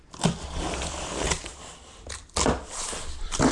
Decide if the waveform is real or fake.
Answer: real